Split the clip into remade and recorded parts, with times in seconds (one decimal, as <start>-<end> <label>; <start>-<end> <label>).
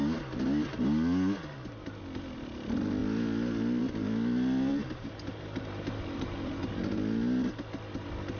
0.0-4.7 recorded; 4.7-6.6 remade; 6.6-8.4 recorded